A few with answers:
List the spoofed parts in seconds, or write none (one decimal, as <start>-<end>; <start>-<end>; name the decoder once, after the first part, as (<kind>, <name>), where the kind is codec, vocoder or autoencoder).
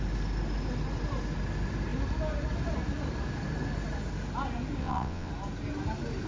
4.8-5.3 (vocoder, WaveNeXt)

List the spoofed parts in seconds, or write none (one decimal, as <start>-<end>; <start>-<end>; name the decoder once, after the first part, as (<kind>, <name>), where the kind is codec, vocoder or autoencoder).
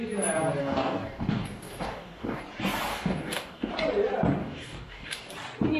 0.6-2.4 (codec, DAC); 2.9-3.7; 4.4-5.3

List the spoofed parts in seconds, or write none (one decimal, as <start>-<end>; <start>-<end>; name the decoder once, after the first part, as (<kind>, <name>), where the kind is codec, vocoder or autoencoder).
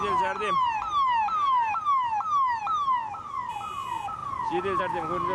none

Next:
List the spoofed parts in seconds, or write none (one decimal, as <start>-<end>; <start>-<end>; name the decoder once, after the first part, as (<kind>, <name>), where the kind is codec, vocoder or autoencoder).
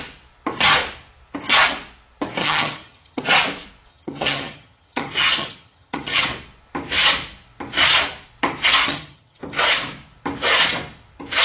2.4-3.2 (vocoder, HiFi-GAN); 3.9-6.2; 8.8-9.4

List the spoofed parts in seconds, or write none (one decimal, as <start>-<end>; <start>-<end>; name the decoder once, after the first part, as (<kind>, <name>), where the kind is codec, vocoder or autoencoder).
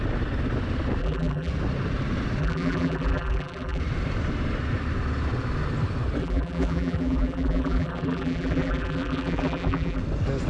1.0-1.5 (vocoder, BigVGAN v2); 2.4-3.8; 6.2-10.0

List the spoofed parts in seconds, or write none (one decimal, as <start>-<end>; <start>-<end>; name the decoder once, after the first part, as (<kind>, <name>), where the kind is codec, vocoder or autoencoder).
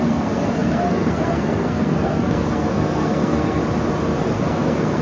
0.0-3.6 (codec, SNAC); 4.2-5.0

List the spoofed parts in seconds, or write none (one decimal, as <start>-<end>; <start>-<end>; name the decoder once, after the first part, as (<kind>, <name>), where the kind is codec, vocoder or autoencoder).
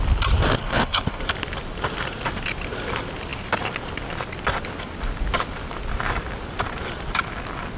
0.6-1.2 (codec, HILCodec)